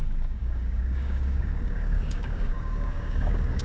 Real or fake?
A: fake